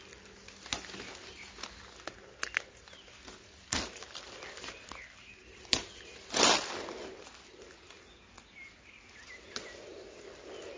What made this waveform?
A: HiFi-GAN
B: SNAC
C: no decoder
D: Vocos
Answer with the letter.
C